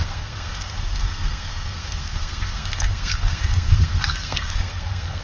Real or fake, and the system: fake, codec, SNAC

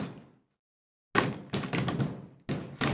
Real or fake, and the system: real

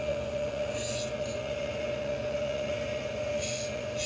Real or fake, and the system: fake, vocoder, Vocos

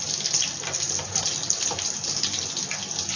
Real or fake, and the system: real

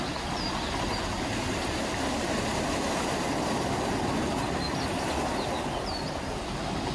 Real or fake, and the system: real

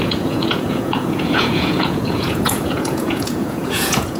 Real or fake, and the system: fake, vocoder, Vocos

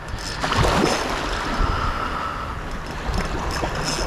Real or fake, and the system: real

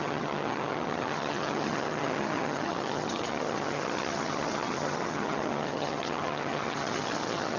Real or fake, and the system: fake, vocoder, HiFi-GAN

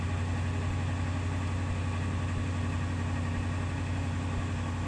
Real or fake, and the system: real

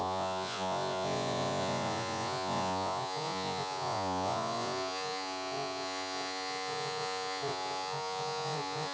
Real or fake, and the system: fake, vocoder, Vocos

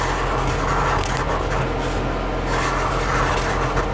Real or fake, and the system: real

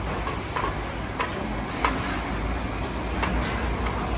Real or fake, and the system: real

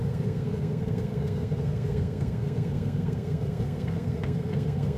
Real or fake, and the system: fake, codec, SNAC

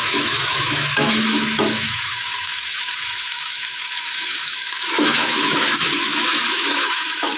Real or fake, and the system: fake, autoencoder, DAC-VAE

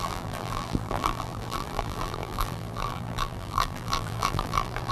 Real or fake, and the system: fake, vocoder, BigVGAN v2